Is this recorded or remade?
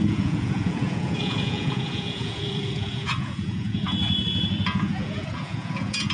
remade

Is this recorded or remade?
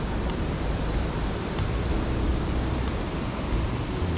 remade